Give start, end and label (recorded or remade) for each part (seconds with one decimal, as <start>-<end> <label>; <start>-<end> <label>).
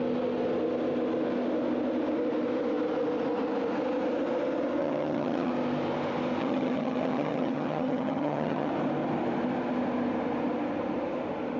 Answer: 0.0-4.8 recorded; 4.8-5.5 remade; 5.5-6.4 recorded; 6.4-8.7 remade; 8.7-11.6 recorded